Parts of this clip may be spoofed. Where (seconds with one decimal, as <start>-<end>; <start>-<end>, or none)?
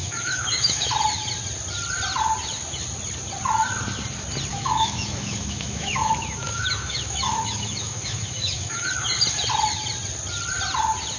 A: 0.0-0.9; 4.5-8.9